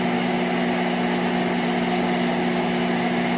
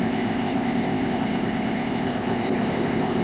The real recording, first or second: first